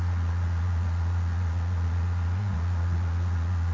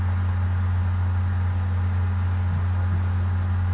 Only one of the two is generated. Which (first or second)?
first